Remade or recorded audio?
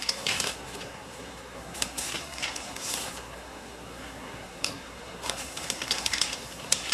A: remade